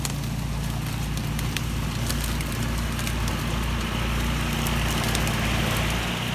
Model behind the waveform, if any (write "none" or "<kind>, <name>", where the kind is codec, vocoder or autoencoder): none